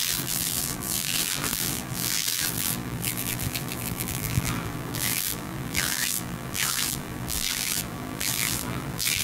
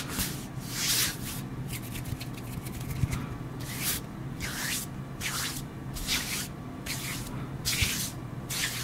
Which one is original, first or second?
second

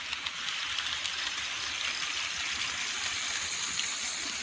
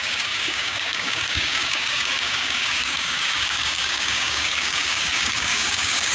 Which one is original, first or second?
first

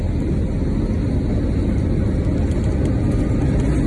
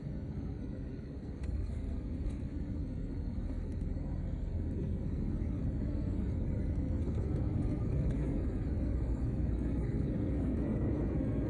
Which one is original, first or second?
first